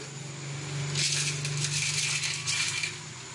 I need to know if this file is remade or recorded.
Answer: recorded